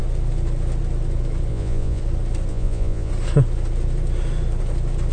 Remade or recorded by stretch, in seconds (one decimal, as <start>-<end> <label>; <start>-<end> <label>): 0.0-1.5 recorded; 1.5-2.0 remade; 2.0-2.5 recorded; 2.5-3.1 remade; 3.1-5.1 recorded

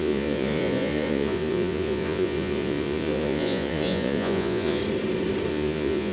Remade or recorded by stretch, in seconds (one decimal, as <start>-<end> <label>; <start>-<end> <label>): 0.0-4.8 remade; 4.8-5.5 recorded; 5.5-6.1 remade

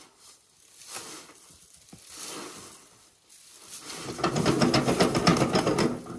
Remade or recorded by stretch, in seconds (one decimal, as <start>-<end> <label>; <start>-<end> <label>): 0.0-6.2 recorded

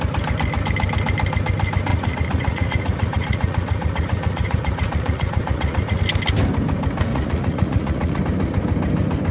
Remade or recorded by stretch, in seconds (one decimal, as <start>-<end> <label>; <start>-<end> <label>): 0.0-1.9 recorded; 1.9-6.0 remade; 6.0-7.1 recorded; 7.1-8.2 remade; 8.2-9.3 recorded

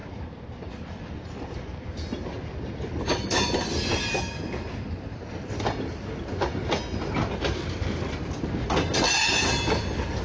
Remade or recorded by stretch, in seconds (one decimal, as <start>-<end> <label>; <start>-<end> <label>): 0.0-10.2 recorded

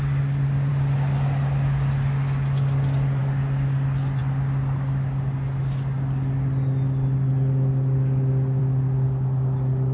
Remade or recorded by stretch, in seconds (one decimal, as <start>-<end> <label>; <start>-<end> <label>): 0.0-9.9 recorded

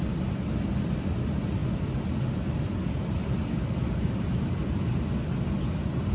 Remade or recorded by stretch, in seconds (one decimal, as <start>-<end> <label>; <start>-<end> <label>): 0.0-6.1 recorded